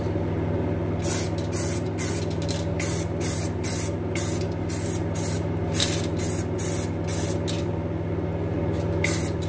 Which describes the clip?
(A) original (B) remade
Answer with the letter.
A